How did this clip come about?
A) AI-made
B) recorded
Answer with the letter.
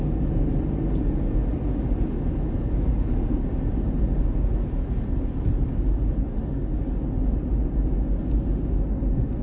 B